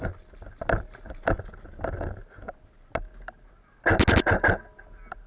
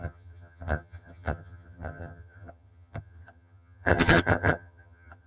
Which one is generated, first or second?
second